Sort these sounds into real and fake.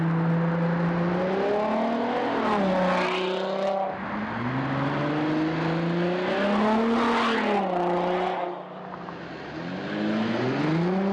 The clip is real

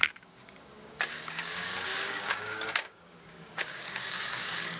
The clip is fake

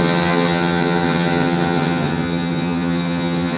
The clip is fake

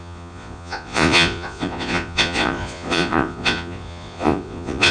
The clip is fake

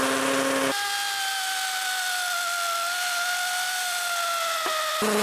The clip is real